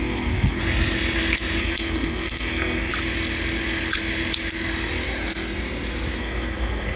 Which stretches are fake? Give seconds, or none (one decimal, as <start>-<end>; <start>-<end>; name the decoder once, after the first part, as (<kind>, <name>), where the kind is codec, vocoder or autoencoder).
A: 0.0-0.6 (codec, SNAC); 1.6-2.9; 6.2-7.0